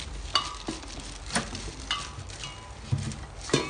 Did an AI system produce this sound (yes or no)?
no